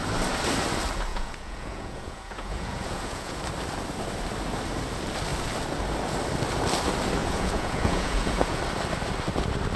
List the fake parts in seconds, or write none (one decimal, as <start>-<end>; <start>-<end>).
1.1-3.4; 7.2-8.6